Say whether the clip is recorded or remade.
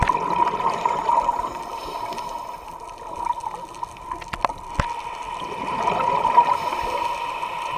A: recorded